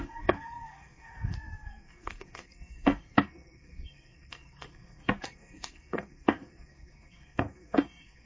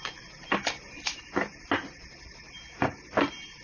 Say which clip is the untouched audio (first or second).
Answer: second